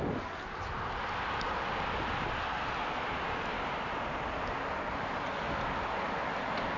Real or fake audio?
real